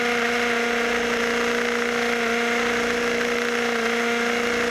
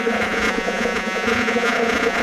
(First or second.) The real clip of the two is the first